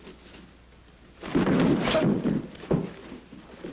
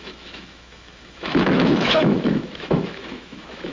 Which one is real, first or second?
first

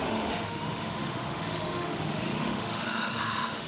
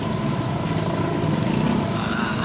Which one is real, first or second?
second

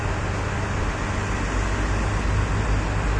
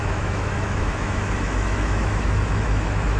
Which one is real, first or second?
first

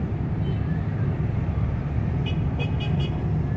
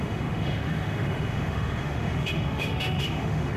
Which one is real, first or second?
first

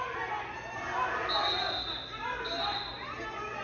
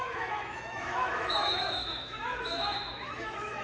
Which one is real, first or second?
first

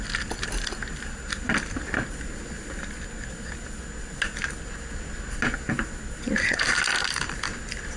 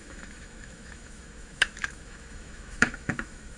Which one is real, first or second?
first